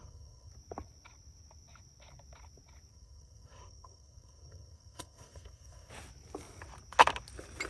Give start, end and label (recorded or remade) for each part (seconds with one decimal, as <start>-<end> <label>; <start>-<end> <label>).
0.0-0.5 remade; 0.5-2.9 recorded; 2.9-5.9 remade; 5.9-7.7 recorded